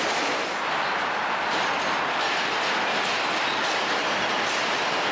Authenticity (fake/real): real